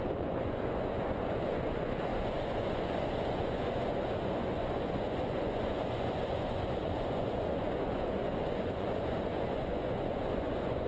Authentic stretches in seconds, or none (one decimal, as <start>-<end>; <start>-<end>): none